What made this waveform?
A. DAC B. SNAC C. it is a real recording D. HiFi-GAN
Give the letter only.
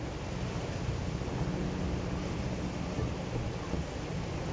C